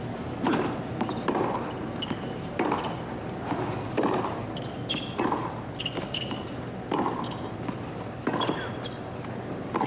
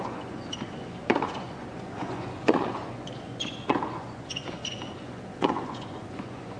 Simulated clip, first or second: second